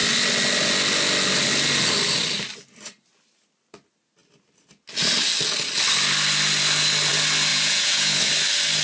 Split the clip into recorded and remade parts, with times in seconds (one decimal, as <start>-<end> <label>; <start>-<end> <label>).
0.0-7.5 recorded; 7.5-8.3 remade; 8.3-8.8 recorded